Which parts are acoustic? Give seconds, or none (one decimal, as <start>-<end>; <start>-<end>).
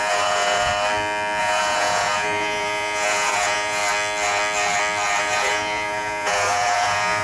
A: 0.7-1.4; 3.8-5.2